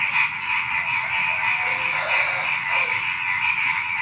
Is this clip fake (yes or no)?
no